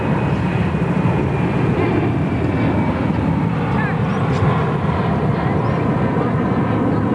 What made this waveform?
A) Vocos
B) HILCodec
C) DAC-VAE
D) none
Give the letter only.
D